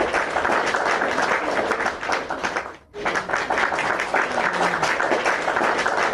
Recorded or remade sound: recorded